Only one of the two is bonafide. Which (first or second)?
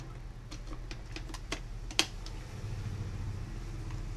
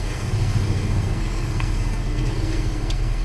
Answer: first